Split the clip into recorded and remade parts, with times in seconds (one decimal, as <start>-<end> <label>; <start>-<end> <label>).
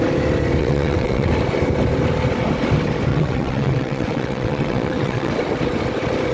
0.0-0.6 recorded; 0.6-1.3 remade; 1.3-3.1 recorded; 3.1-5.3 remade; 5.3-6.3 recorded